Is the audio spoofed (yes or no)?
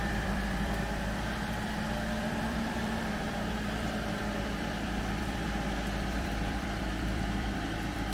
yes